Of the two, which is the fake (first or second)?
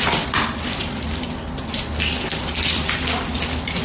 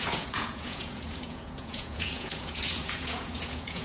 second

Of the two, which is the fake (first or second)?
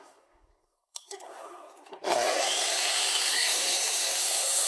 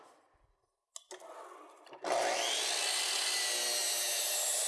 first